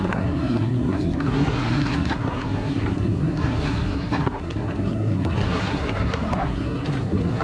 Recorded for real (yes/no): no